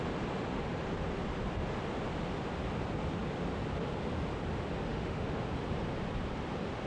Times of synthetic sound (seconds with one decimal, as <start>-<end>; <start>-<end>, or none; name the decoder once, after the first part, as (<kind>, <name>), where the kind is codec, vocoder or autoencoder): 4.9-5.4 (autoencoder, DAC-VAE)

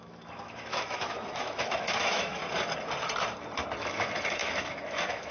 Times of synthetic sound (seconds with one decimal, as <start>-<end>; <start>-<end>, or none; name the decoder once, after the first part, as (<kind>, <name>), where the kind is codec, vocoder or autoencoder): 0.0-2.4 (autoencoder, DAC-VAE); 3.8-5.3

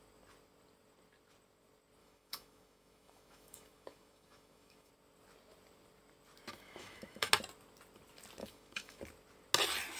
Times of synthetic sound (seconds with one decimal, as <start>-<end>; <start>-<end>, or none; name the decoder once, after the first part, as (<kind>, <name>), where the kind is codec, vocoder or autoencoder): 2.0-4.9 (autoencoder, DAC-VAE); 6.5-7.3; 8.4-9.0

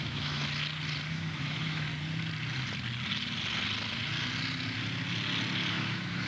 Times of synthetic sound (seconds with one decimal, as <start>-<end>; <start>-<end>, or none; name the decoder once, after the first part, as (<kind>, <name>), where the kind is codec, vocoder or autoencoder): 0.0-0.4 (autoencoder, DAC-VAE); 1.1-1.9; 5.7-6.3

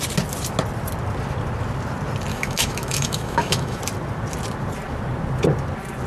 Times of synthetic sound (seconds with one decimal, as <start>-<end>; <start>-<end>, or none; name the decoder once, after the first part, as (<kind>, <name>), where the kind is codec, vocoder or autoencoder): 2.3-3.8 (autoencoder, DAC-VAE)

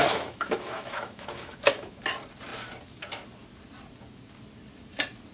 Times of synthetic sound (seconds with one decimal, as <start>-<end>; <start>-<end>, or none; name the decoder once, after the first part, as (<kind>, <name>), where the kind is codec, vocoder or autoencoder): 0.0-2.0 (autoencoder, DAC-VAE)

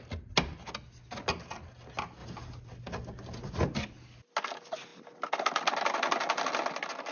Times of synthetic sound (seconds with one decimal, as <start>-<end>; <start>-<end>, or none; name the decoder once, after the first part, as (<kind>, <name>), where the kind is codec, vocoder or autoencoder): none